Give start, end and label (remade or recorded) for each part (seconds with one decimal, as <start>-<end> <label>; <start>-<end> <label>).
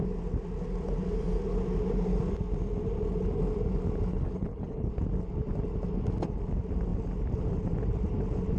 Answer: 0.0-4.1 recorded; 4.1-4.9 remade; 4.9-8.6 recorded